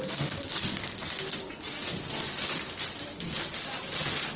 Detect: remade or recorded recorded